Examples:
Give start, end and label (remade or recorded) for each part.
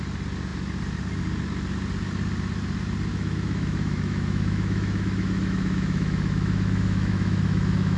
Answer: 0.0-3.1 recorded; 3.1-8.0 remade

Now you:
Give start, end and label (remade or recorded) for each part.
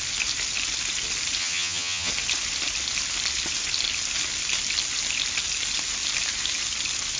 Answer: 0.0-1.4 recorded; 1.4-2.1 remade; 2.1-7.2 recorded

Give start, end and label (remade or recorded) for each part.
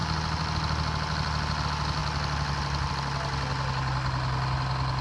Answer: 0.0-5.0 recorded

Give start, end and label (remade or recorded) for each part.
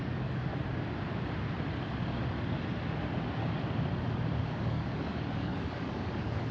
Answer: 0.0-0.5 remade; 0.5-4.4 recorded; 4.4-6.5 remade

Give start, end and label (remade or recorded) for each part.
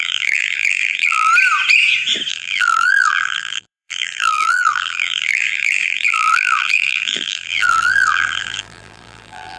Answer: 0.0-1.3 remade; 1.3-2.3 recorded; 2.3-9.6 remade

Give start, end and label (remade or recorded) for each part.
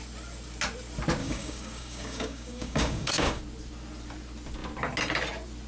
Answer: 0.0-1.2 recorded; 1.2-3.4 remade; 3.4-5.7 recorded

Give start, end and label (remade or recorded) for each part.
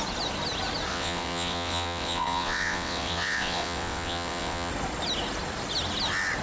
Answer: 0.0-0.9 recorded; 0.9-4.7 remade; 4.7-6.4 recorded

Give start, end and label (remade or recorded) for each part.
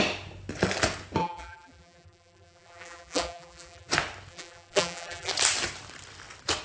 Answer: 0.0-1.2 recorded; 1.2-3.9 remade; 3.9-4.3 recorded; 4.3-5.3 remade; 5.3-6.6 recorded